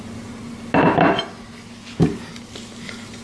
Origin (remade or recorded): recorded